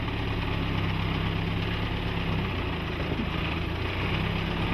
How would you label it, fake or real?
real